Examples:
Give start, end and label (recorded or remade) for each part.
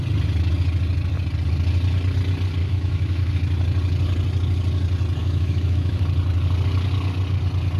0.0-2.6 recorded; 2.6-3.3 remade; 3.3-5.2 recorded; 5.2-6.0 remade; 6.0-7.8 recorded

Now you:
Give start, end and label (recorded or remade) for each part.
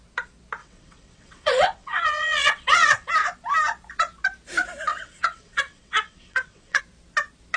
0.0-0.6 recorded; 0.6-3.1 remade; 3.1-4.9 recorded; 4.9-6.8 remade; 6.8-7.6 recorded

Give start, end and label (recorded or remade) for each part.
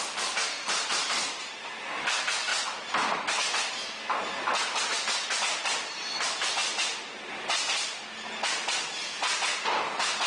0.0-10.3 recorded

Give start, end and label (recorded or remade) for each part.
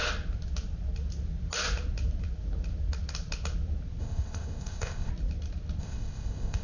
0.0-4.0 recorded; 4.0-5.1 remade; 5.1-5.8 recorded; 5.8-6.6 remade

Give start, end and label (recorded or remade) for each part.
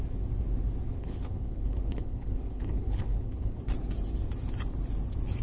0.0-1.0 recorded; 1.0-3.6 remade; 3.6-5.4 recorded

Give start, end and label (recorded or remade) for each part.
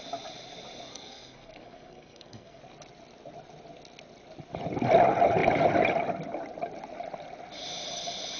0.0-0.9 recorded; 0.9-2.6 remade; 2.6-8.4 recorded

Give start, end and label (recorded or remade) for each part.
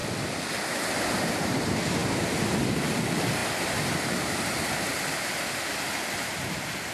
0.0-6.9 recorded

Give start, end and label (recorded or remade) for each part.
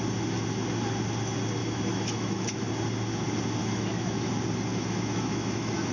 0.0-1.6 recorded; 1.6-2.7 remade; 2.7-3.6 recorded; 3.6-4.3 remade; 4.3-4.7 recorded; 4.7-5.9 remade